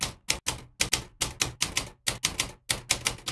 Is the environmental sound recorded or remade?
recorded